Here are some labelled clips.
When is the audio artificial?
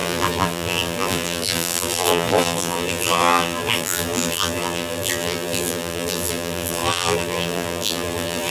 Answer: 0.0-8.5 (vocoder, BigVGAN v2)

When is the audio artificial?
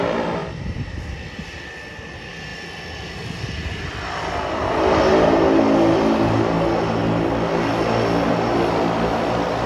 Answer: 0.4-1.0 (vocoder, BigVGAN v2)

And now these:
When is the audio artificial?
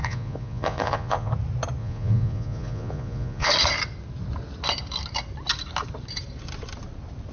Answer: 0.0-1.3 (vocoder, Vocos); 1.8-3.5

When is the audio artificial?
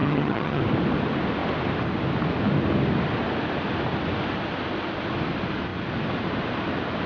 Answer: 0.0-0.6 (vocoder, HiFi-GAN)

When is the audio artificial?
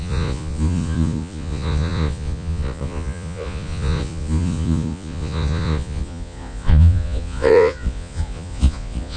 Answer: 0.0-9.2 (vocoder, Vocos)